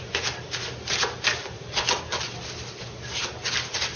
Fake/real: real